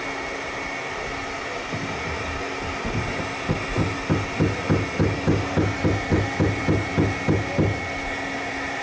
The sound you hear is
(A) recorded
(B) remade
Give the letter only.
A